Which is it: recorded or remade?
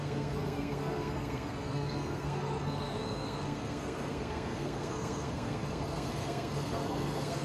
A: remade